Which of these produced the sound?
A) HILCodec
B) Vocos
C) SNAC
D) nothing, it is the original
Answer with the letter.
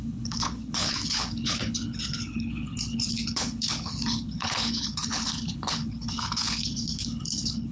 A